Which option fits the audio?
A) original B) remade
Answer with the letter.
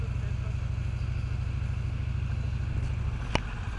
A